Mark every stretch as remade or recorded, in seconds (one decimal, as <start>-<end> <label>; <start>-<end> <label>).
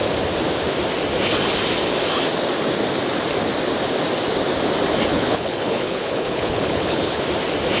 0.0-5.1 recorded; 5.1-7.2 remade; 7.2-7.8 recorded